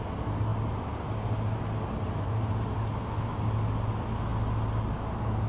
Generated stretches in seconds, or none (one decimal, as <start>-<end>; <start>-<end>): none